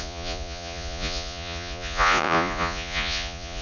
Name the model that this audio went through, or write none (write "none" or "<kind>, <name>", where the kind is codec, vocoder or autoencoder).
vocoder, Vocos